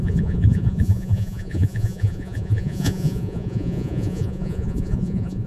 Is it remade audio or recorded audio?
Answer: remade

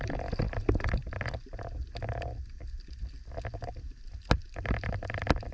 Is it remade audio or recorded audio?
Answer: recorded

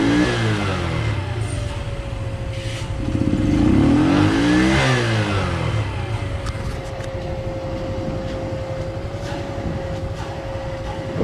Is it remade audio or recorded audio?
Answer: recorded